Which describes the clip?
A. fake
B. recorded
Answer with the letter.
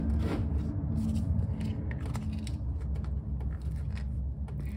B